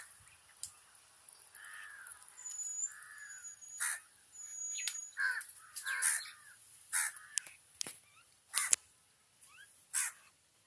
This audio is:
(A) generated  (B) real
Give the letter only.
B